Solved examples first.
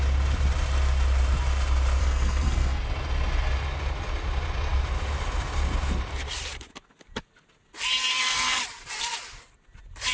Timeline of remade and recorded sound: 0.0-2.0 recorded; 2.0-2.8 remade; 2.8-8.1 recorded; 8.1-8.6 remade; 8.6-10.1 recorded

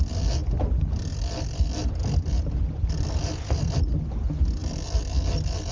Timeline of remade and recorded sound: 0.0-5.7 recorded

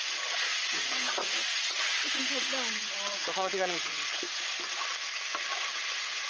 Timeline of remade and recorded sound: 0.0-2.2 remade; 2.2-2.7 recorded; 2.7-4.3 remade; 4.3-6.3 recorded

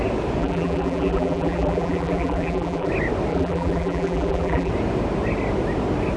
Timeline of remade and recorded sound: 0.0-0.4 recorded; 0.4-2.9 remade; 2.9-3.3 recorded; 3.3-4.7 remade; 4.7-6.2 recorded

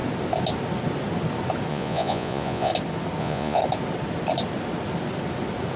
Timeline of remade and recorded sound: 0.0-1.7 recorded; 1.7-2.7 remade; 2.7-3.2 recorded; 3.2-3.6 remade; 3.6-5.8 recorded

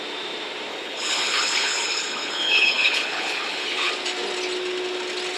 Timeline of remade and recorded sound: 0.0-0.7 recorded; 0.7-3.9 remade; 3.9-5.4 recorded

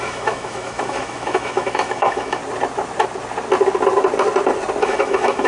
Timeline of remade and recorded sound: 0.0-2.4 remade; 2.4-4.8 recorded; 4.8-5.5 remade